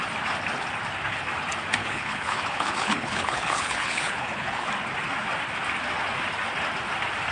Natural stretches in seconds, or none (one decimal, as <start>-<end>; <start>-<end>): 0.0-1.8; 4.7-7.3